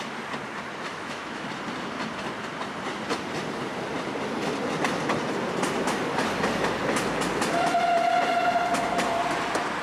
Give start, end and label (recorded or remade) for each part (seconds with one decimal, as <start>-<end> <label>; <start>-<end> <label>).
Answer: 0.0-0.9 recorded; 0.9-1.5 remade; 1.5-9.8 recorded